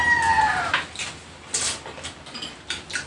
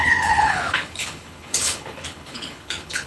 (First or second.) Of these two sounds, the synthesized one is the second